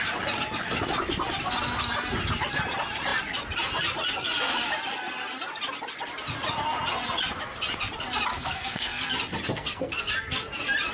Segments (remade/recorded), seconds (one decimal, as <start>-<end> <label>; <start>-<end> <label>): 0.0-8.3 recorded; 8.3-9.1 remade; 9.1-9.5 recorded; 9.5-10.1 remade; 10.1-10.9 recorded